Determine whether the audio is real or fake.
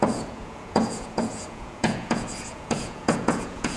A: fake